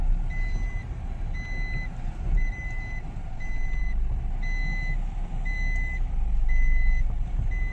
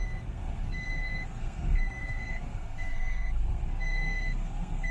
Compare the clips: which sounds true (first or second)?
first